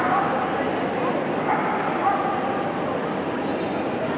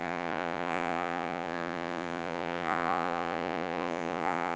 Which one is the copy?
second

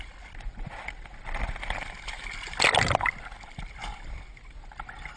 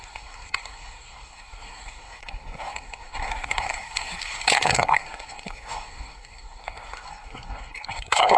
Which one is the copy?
second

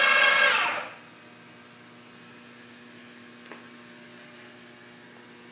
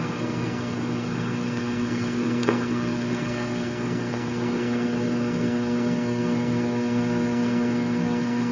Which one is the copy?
second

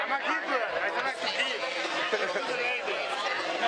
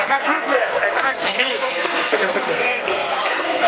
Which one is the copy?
second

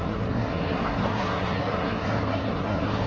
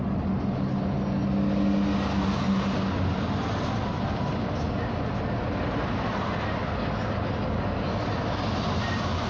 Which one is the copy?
first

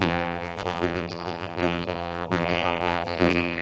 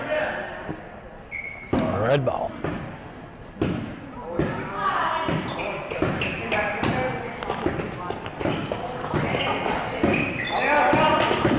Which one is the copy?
first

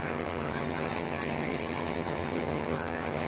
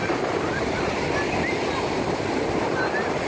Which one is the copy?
first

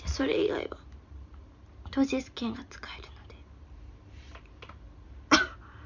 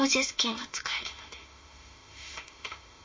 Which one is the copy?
second